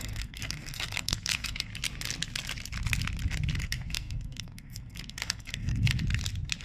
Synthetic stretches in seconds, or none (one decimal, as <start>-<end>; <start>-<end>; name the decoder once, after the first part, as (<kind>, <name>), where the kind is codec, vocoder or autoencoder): 0.0-1.7 (codec, SNAC); 3.6-5.9